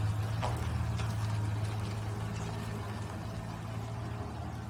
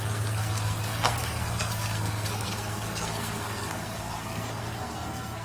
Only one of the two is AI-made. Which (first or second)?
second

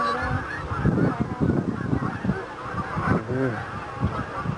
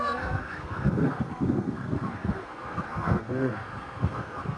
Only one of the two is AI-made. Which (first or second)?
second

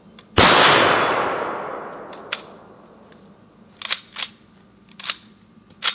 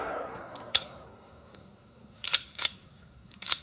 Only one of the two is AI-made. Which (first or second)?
second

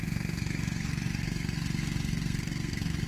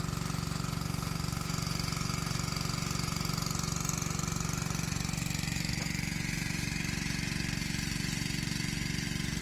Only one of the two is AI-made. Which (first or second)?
first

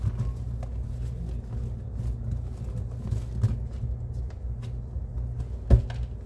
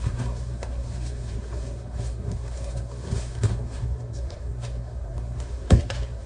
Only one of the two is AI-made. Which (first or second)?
second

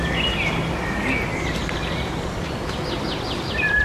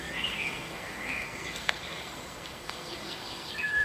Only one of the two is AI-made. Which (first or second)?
second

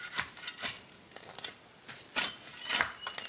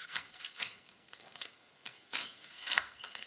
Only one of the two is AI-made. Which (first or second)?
second